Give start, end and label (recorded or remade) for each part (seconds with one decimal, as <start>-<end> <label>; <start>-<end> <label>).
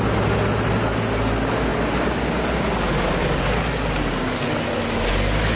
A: 0.0-5.6 recorded